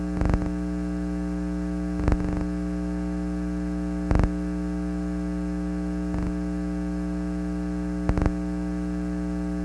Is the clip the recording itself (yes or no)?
yes